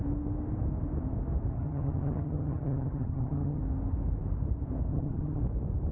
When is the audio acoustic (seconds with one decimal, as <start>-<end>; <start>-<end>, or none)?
0.0-1.5; 3.6-4.9; 5.4-5.9